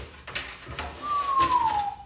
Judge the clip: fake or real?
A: real